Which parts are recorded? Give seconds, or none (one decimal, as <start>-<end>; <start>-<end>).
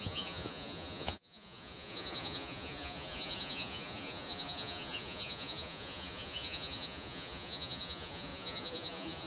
none